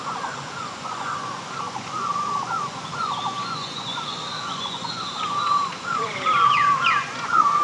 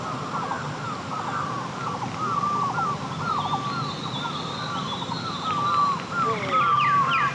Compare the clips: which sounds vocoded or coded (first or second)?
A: first